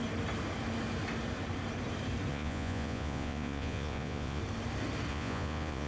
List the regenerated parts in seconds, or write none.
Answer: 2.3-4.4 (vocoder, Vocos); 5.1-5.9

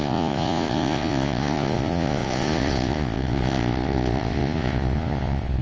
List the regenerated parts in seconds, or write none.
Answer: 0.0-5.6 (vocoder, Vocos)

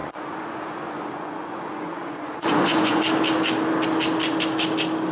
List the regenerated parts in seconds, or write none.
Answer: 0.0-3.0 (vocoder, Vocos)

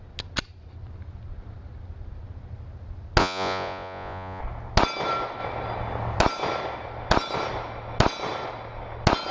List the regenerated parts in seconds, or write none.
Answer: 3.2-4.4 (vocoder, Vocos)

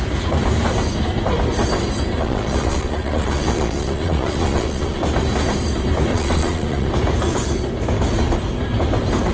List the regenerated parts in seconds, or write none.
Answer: 2.2-5.0 (vocoder, Vocos); 6.1-6.9

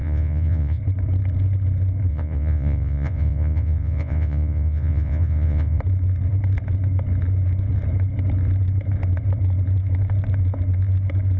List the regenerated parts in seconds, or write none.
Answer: 0.0-0.8 (vocoder, Vocos); 2.1-5.8